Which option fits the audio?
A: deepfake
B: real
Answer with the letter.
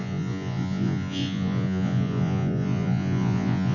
A